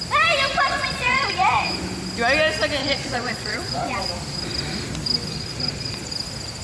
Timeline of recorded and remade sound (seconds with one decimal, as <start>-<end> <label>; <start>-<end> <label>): 0.0-0.5 recorded; 0.5-1.7 remade; 1.7-2.8 recorded; 2.8-4.1 remade; 4.1-5.3 recorded; 5.3-6.1 remade; 6.1-6.6 recorded